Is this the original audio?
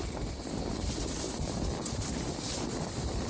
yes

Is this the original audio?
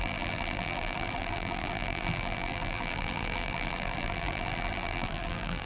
no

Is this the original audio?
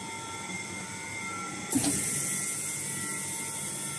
yes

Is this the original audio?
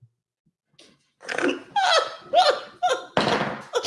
yes